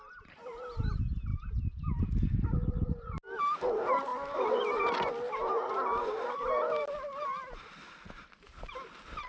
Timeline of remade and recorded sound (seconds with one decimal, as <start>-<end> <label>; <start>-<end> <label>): 0.0-9.3 recorded